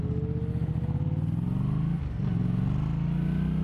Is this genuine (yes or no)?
yes